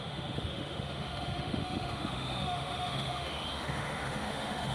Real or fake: fake